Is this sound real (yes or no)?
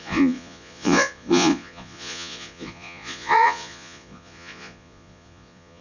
no